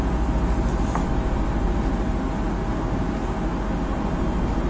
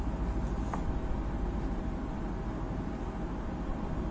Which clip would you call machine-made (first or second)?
second